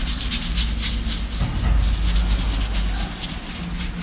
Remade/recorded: recorded